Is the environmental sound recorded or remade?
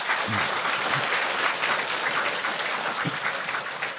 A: recorded